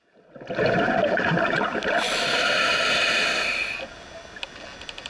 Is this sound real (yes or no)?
yes